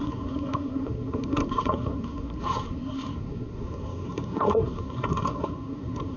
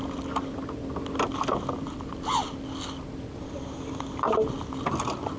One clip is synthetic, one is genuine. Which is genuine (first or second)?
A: second